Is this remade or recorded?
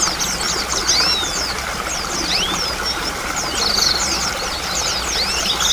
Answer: recorded